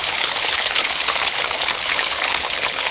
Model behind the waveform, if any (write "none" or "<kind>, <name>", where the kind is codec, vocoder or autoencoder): codec, HILCodec